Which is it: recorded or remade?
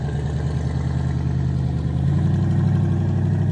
recorded